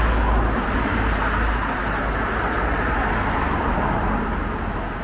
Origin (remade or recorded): recorded